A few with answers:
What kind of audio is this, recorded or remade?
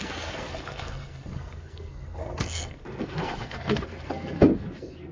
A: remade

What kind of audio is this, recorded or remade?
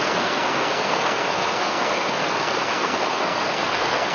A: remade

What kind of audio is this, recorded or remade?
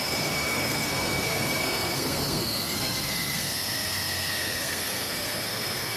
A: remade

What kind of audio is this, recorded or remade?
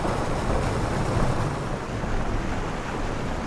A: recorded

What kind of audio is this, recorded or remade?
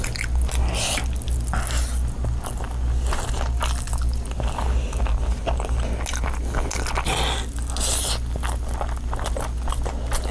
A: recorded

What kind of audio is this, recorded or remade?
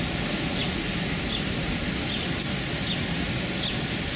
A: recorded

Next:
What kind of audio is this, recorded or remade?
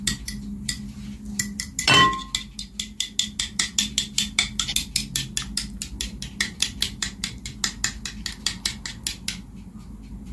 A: recorded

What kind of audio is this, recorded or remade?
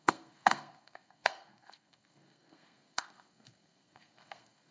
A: remade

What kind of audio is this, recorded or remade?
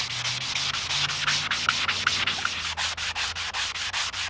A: recorded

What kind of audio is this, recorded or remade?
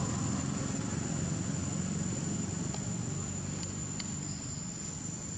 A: recorded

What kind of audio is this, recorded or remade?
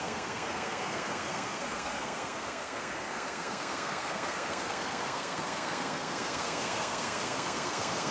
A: remade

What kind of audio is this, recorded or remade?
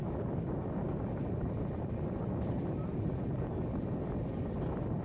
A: recorded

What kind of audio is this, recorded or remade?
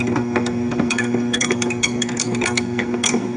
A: remade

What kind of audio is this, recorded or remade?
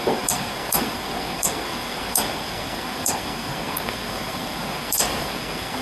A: remade